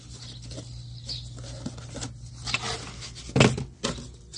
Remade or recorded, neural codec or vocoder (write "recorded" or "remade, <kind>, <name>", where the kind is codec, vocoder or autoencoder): recorded